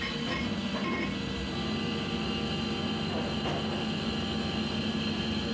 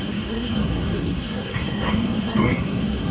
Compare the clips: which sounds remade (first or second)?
second